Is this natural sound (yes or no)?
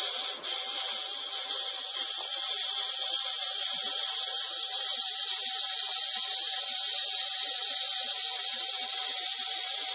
yes